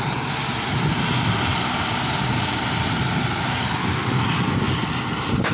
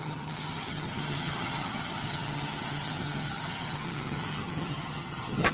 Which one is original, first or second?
first